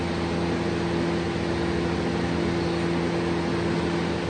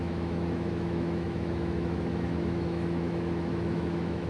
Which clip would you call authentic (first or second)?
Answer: first